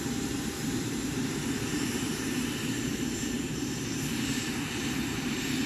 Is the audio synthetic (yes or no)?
yes